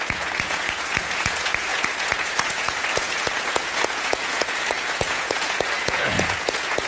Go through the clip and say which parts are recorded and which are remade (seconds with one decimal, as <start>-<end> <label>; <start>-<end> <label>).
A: 0.0-6.9 remade